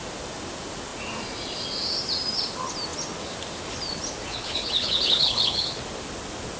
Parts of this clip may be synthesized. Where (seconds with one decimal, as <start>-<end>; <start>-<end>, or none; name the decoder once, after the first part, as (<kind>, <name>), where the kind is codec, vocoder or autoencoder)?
4.3-5.8 (codec, HILCodec)